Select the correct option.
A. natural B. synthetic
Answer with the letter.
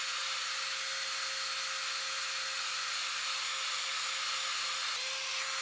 A